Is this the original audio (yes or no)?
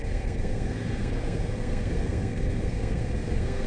no